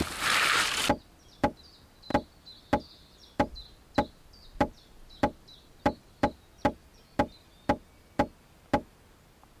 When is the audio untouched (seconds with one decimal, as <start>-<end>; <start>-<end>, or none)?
0.0-9.6